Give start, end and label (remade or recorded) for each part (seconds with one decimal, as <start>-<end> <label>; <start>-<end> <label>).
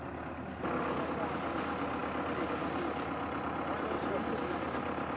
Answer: 0.0-5.2 recorded